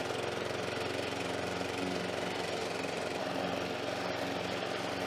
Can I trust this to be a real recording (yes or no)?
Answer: no